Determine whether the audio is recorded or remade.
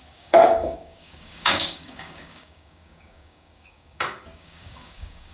remade